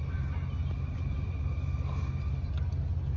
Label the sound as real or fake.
real